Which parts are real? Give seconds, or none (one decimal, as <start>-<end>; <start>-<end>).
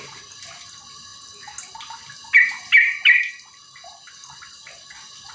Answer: 0.0-5.3